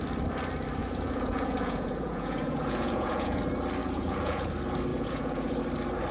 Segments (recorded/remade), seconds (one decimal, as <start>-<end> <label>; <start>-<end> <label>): 0.0-0.8 recorded; 0.8-3.4 remade; 3.4-3.8 recorded; 3.8-4.5 remade; 4.5-4.9 recorded; 4.9-5.6 remade; 5.6-6.1 recorded